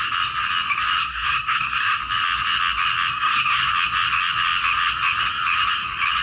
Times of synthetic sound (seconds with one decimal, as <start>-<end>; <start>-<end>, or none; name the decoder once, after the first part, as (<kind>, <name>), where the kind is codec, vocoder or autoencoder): 1.0-2.0 (codec, SNAC); 3.1-3.6